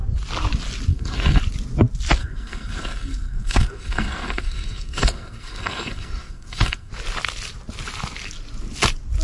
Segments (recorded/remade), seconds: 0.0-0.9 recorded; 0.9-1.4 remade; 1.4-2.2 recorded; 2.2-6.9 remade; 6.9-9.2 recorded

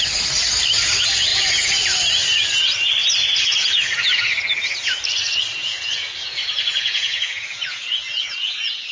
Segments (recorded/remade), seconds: 0.0-5.6 recorded; 5.6-8.9 remade

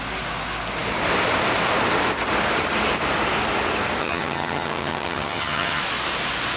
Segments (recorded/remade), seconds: 0.0-4.0 recorded; 4.0-5.8 remade; 5.8-6.6 recorded

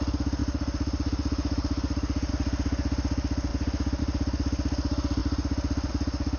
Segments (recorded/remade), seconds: 0.0-0.4 recorded; 0.4-2.3 remade; 2.3-6.4 recorded

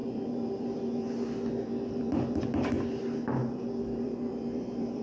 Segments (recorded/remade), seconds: 0.0-2.4 remade; 2.4-3.4 recorded; 3.4-5.0 remade

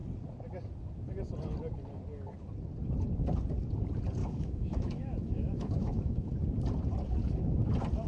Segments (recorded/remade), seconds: 0.0-4.2 recorded; 4.2-6.3 remade; 6.3-8.1 recorded

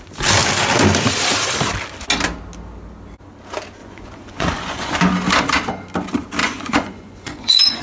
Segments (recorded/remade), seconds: 0.0-3.8 recorded; 3.8-5.0 remade; 5.0-6.4 recorded; 6.4-7.8 remade